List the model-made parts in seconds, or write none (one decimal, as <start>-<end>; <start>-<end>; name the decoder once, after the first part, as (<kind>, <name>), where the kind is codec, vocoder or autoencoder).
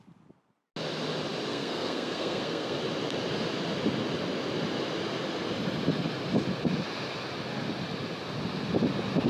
1.5-2.8 (codec, SNAC)